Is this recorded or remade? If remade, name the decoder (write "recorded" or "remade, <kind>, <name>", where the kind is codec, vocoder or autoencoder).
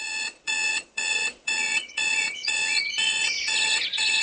remade, vocoder, Vocos